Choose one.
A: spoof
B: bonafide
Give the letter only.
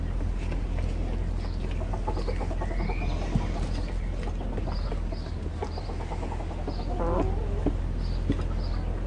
B